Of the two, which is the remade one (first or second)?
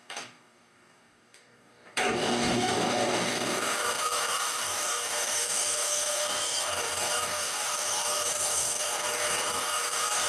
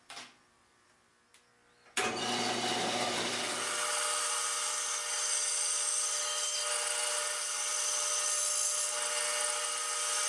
first